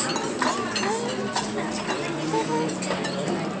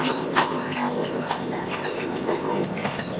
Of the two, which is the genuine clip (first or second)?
first